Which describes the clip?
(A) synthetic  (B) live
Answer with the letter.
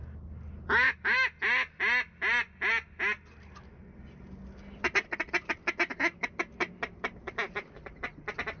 B